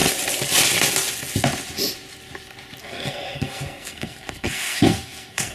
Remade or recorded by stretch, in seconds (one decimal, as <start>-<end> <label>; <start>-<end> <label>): 0.0-2.8 recorded; 2.8-5.5 remade